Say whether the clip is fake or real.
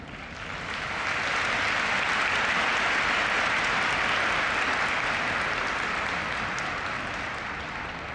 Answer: real